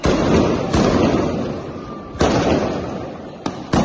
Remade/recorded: recorded